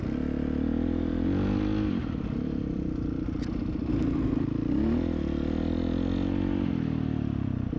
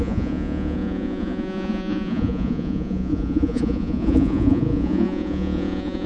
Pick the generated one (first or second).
second